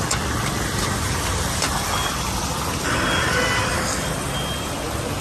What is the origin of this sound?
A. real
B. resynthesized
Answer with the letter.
A